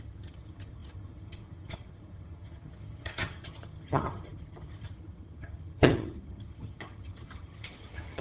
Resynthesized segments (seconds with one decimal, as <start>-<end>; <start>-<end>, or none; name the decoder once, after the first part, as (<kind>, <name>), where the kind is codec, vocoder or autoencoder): 0.0-8.2 (vocoder, HiFi-GAN)

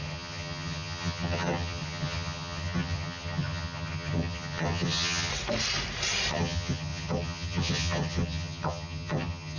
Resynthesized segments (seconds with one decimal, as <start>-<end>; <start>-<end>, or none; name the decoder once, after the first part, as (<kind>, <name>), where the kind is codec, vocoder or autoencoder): 0.0-5.3 (vocoder, HiFi-GAN); 6.3-9.6